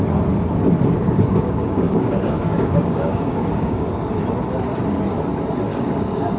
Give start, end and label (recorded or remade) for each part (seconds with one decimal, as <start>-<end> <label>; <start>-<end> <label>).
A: 0.0-1.0 recorded; 1.0-3.9 remade; 3.9-5.7 recorded; 5.7-6.4 remade